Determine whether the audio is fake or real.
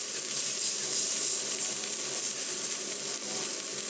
real